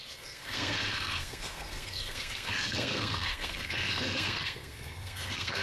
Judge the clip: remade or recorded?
remade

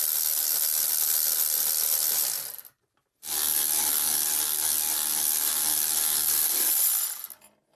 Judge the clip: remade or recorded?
recorded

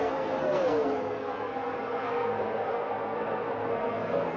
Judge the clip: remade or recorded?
remade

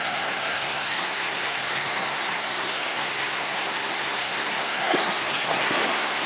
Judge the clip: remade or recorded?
remade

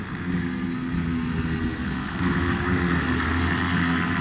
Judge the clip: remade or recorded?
remade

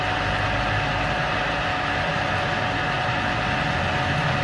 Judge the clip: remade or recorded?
recorded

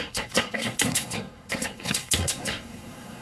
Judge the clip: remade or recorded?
remade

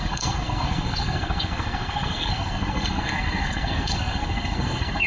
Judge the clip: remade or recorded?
remade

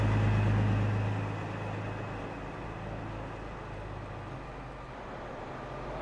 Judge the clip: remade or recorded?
recorded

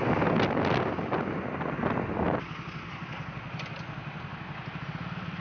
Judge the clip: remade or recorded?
recorded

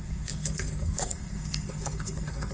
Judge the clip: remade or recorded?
remade